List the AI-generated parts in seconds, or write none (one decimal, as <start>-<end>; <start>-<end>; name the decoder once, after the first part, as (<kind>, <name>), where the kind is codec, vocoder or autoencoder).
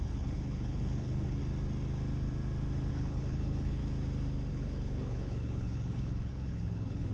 0.0-1.4 (codec, HILCodec); 2.9-3.8; 4.5-7.1